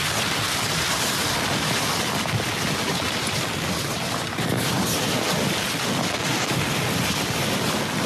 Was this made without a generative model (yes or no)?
yes